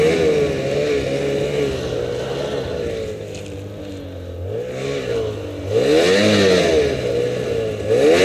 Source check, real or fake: real